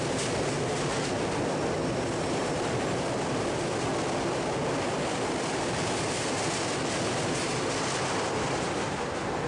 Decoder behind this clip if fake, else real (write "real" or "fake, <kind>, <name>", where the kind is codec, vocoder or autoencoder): real